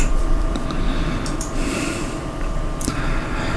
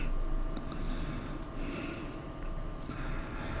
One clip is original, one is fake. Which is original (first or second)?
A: second